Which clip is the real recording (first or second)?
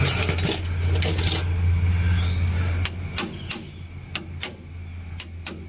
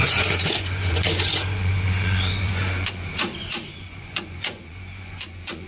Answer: first